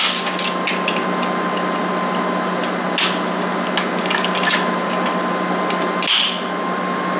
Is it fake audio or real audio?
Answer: real